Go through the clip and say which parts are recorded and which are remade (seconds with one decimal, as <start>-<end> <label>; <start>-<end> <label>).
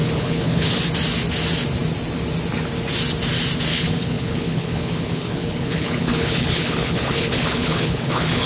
0.0-0.8 remade; 0.8-3.7 recorded; 3.7-8.5 remade